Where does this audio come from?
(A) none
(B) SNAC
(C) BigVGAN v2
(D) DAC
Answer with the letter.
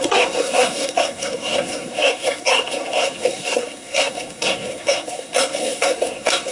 B